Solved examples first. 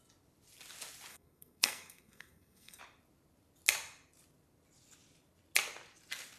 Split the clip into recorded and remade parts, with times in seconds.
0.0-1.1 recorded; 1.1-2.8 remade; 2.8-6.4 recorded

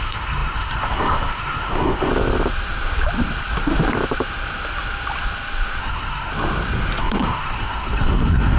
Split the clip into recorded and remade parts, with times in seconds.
0.0-2.1 remade; 2.1-5.8 recorded; 5.8-6.3 remade; 6.3-7.0 recorded; 7.0-8.6 remade

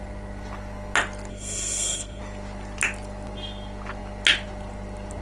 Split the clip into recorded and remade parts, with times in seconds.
0.0-1.3 recorded; 1.3-2.2 remade; 2.2-5.2 recorded

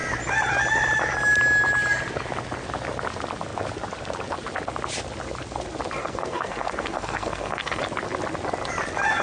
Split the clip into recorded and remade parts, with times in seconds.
0.0-6.0 recorded; 6.0-7.8 remade; 7.8-9.2 recorded